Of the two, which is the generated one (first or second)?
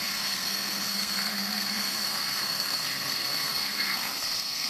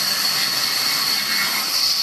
first